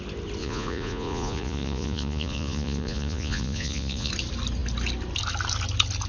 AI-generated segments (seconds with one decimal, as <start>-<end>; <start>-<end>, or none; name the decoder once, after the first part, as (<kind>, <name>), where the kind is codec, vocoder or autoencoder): 0.4-4.1 (vocoder, Vocos)